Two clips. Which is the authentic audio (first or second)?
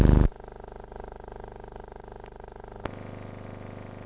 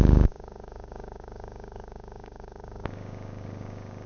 first